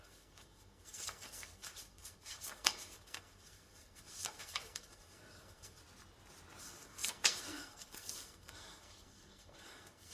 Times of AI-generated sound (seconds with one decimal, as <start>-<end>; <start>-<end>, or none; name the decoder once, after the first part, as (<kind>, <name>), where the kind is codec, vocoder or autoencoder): 0.0-5.8 (codec, SNAC); 6.6-10.1